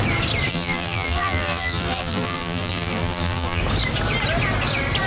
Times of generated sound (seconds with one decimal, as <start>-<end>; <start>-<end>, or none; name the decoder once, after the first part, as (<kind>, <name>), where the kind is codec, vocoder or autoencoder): 0.5-3.6 (vocoder, BigVGAN v2)

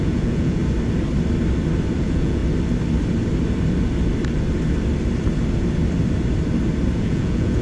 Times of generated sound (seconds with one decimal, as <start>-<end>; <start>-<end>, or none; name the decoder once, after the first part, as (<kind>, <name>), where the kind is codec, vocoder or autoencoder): 0.0-0.6 (vocoder, Vocos); 2.0-2.4; 7.0-7.6

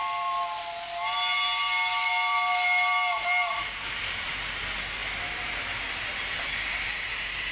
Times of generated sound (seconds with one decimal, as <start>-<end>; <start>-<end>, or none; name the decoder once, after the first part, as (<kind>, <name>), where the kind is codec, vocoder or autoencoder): none

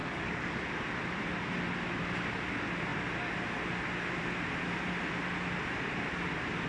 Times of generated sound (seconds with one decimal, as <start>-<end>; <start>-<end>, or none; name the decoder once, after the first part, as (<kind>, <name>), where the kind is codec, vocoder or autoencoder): 0.0-0.6 (codec, DAC)

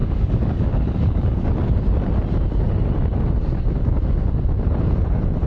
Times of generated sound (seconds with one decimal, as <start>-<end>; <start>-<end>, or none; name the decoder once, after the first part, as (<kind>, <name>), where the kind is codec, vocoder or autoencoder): 0.0-1.5 (codec, DAC); 3.8-4.4

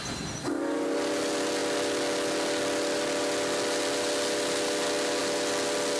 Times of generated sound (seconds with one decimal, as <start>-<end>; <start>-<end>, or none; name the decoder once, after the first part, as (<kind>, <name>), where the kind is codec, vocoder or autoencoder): none

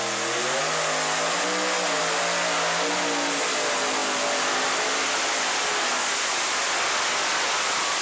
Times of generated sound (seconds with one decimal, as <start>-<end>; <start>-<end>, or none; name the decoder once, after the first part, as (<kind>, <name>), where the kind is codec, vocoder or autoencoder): none